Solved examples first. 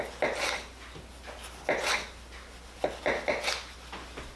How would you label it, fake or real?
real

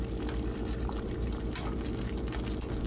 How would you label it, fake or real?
real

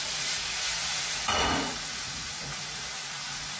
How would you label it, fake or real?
fake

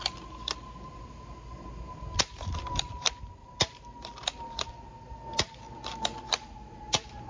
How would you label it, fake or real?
real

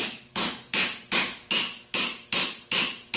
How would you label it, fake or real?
real